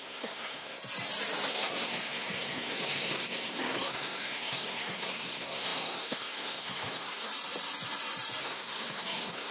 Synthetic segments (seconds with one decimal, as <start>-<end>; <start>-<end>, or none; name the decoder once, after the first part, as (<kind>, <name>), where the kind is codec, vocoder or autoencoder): 0.0-0.8 (codec, SNAC); 1.5-7.3; 8.4-9.5